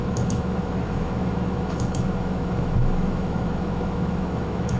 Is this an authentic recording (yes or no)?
no